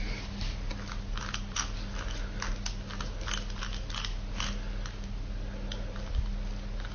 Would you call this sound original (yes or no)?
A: yes